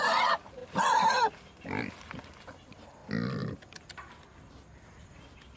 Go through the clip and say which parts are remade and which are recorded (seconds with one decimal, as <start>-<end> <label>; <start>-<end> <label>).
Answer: 0.0-5.6 recorded